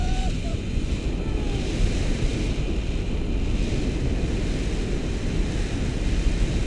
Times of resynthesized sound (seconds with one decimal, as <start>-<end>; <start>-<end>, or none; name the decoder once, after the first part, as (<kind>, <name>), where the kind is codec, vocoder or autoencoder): 0.0-0.9 (vocoder, Vocos)